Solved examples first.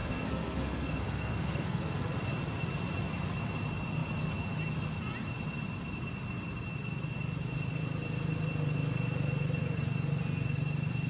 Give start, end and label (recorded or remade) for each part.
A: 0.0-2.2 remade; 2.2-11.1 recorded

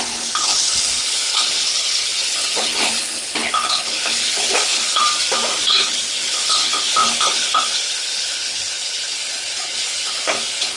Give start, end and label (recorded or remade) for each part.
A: 0.0-5.0 remade; 5.0-5.6 recorded; 5.6-10.8 remade